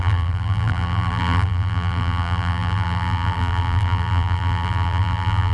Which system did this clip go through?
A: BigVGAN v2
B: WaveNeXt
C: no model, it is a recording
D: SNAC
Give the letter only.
A